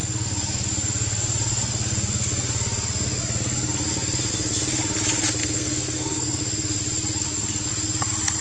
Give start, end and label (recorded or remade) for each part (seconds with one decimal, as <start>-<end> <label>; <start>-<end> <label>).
0.0-5.4 recorded; 5.4-6.4 remade; 6.4-8.4 recorded